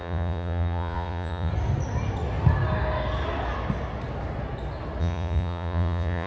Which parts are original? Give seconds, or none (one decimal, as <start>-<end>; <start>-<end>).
1.5-5.0